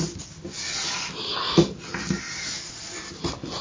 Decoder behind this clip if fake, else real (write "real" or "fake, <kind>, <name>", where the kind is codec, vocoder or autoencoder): real